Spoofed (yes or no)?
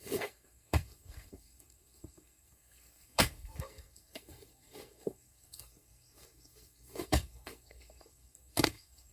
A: yes